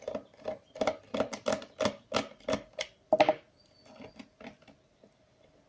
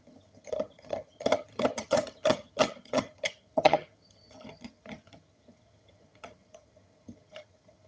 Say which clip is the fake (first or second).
second